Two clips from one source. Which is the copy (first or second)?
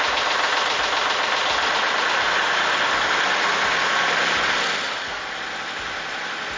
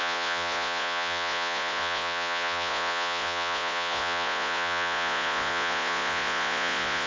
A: second